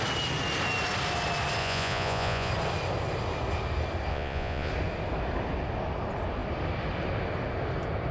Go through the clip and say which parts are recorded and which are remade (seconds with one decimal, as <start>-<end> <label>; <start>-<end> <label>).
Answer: 0.0-1.6 recorded; 1.6-2.5 remade; 2.5-4.1 recorded; 4.1-4.7 remade; 4.7-8.1 recorded